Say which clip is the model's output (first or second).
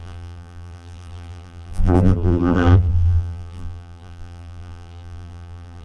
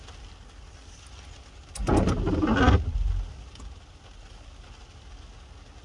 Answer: first